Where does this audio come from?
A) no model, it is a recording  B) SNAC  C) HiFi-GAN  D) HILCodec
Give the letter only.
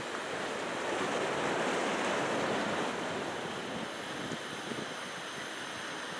A